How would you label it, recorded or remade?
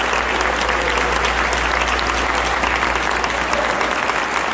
recorded